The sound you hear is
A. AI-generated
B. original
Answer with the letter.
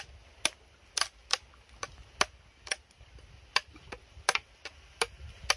B